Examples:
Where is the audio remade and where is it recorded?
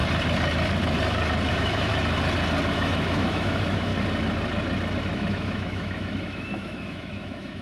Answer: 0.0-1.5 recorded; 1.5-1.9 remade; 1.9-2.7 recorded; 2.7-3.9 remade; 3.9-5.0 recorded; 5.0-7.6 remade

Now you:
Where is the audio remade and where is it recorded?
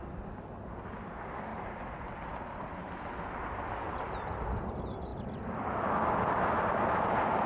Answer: 0.0-7.5 recorded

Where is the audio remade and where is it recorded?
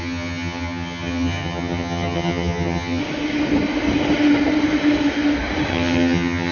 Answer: 0.0-3.0 remade; 3.0-5.7 recorded; 5.7-6.5 remade